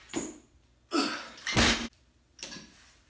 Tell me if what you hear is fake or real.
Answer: real